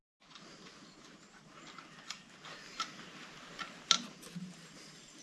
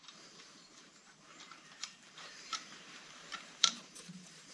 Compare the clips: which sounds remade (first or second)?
second